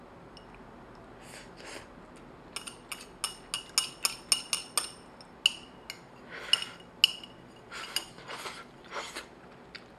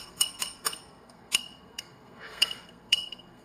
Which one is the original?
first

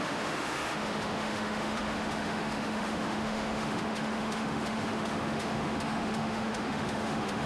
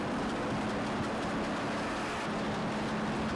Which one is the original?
second